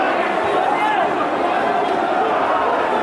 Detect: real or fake real